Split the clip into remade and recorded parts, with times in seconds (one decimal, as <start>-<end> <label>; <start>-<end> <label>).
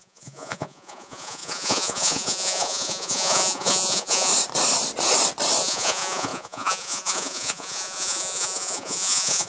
0.0-4.3 remade; 4.3-5.6 recorded; 5.6-9.5 remade